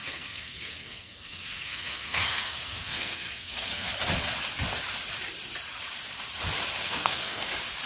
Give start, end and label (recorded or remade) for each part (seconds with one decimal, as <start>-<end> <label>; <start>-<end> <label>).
0.0-3.9 remade; 3.9-6.8 recorded; 6.8-7.5 remade; 7.5-7.9 recorded